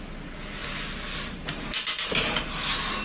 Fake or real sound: real